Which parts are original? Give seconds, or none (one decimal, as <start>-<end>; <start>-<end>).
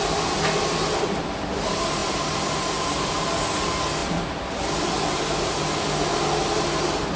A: 0.0-7.2